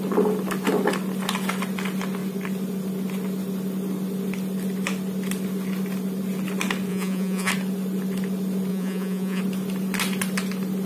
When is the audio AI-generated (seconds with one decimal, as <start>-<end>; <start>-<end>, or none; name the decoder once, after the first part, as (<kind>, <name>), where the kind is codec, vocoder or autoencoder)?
6.9-7.5 (vocoder, Vocos); 8.7-9.4